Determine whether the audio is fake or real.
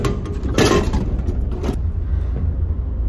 real